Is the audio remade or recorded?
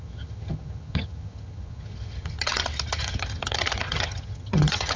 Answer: remade